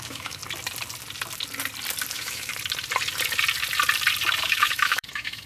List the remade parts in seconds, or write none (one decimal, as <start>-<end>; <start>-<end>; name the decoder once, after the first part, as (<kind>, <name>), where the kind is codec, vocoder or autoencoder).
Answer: 0.0-0.4 (autoencoder, DAC-VAE); 2.1-2.5; 4.4-5.5